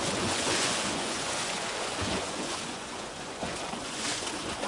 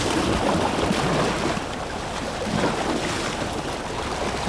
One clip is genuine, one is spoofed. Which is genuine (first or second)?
second